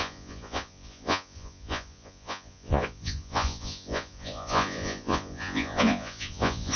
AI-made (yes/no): yes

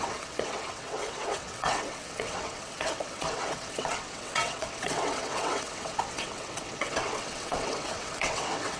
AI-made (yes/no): yes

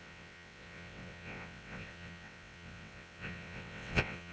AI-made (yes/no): yes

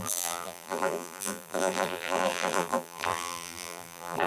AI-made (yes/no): yes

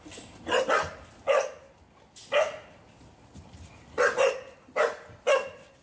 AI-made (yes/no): no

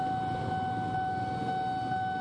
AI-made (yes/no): no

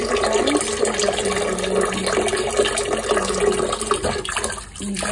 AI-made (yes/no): no